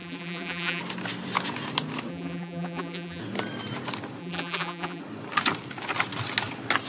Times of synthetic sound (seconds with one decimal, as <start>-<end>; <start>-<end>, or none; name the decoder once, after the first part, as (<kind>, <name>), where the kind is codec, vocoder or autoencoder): 0.0-0.8 (vocoder, BigVGAN v2); 2.1-3.2; 4.2-5.0